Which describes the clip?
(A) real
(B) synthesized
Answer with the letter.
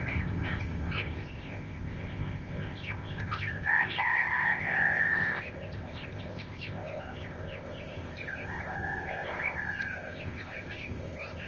B